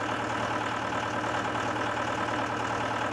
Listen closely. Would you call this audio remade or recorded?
recorded